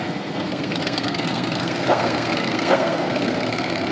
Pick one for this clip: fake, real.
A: fake